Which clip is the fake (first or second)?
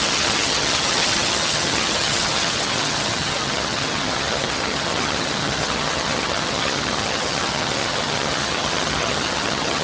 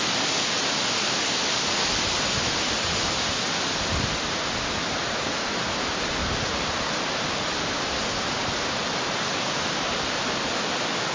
first